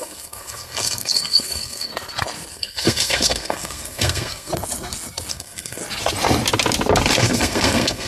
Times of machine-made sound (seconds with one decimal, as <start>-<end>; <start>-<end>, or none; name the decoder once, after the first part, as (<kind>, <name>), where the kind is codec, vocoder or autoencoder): 0.0-1.9 (codec, SNAC); 2.5-4.5; 5.3-5.8; 7.1-8.1